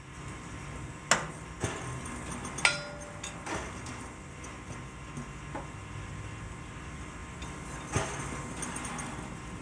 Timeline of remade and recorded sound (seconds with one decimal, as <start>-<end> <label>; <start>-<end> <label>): 0.0-9.6 recorded